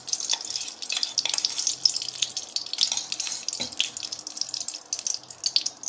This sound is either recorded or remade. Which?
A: recorded